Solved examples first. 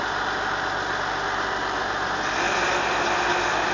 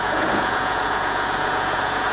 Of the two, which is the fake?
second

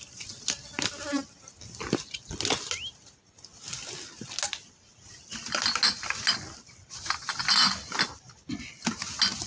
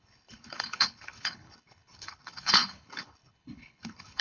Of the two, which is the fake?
second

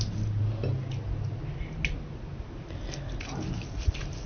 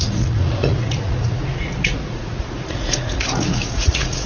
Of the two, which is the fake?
second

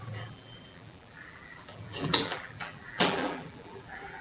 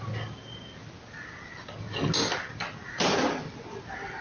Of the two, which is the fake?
first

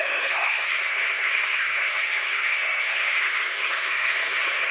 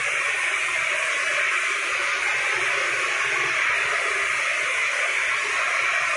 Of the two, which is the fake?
first